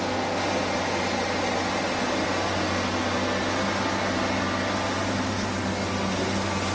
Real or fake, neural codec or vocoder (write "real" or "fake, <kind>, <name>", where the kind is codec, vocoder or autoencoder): real